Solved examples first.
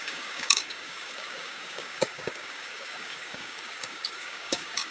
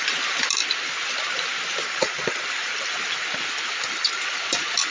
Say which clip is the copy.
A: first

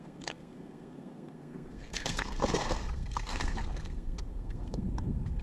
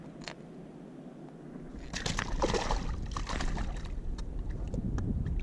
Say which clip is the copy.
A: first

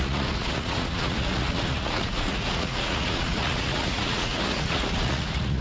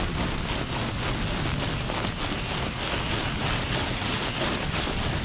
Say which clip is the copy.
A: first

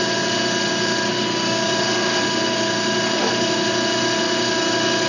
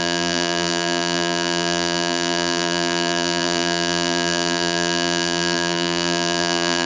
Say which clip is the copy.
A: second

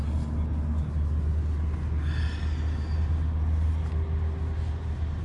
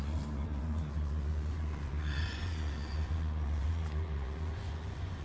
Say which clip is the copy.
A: second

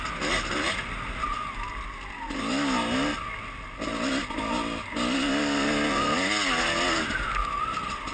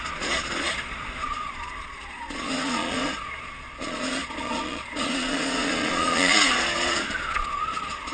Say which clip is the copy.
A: second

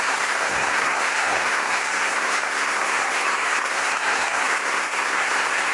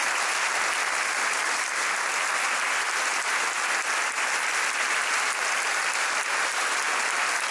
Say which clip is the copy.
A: first